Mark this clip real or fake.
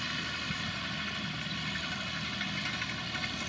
real